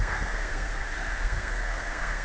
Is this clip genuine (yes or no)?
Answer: no